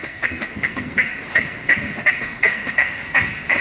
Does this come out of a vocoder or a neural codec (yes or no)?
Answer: yes